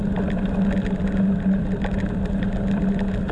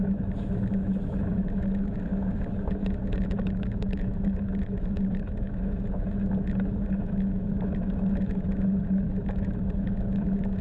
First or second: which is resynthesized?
second